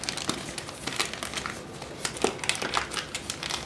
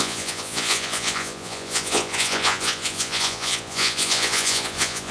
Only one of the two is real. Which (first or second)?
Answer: first